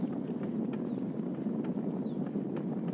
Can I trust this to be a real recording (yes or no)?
yes